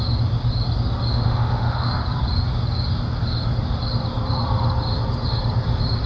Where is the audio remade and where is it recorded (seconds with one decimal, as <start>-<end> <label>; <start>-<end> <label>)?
0.0-1.1 recorded; 1.1-1.9 remade; 1.9-6.1 recorded